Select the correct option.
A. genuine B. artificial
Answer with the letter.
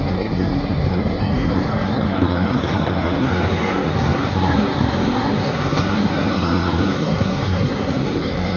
B